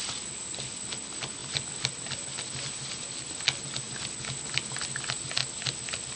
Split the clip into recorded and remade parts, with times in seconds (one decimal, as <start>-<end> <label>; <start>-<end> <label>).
0.0-6.2 recorded